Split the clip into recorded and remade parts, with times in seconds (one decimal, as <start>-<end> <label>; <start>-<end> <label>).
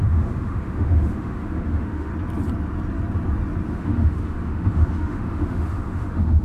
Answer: 0.0-2.1 remade; 2.1-3.7 recorded; 3.7-6.4 remade